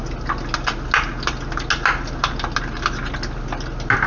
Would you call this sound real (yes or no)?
yes